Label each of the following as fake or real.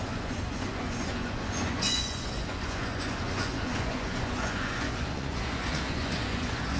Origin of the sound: fake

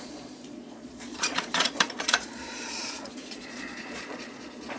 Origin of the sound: fake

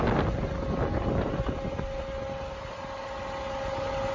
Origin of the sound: real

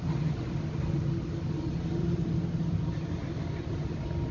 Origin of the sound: real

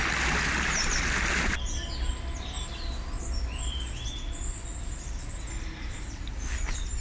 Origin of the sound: real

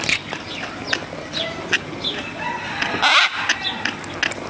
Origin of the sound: real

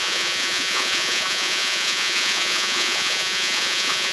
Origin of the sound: fake